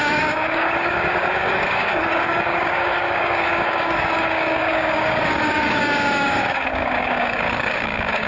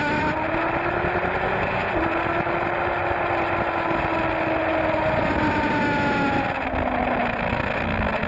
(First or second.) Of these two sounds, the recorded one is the second